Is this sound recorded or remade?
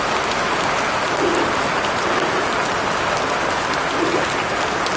recorded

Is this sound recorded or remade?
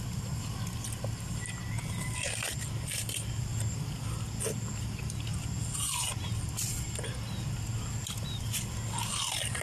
recorded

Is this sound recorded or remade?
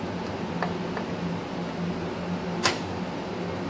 remade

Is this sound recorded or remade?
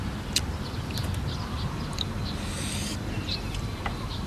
recorded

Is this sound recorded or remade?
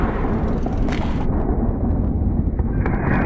recorded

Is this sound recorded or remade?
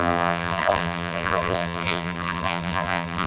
remade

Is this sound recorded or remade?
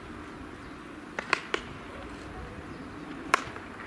recorded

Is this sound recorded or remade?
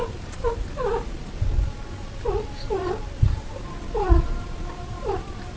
remade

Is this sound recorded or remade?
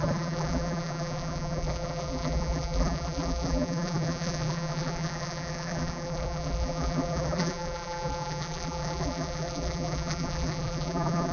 remade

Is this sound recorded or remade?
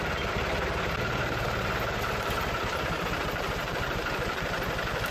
remade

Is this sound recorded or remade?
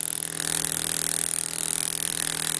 remade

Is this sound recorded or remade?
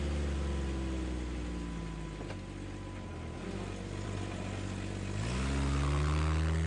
recorded